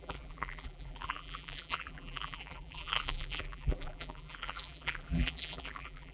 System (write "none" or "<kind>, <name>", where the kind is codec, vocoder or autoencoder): vocoder, BigVGAN v2